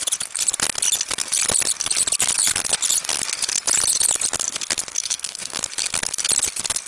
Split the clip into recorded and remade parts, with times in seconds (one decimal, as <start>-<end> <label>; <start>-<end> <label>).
0.0-5.0 recorded; 5.0-5.6 remade; 5.6-6.9 recorded